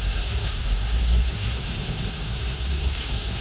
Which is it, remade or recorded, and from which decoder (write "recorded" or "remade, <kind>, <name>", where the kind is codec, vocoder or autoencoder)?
remade, codec, SNAC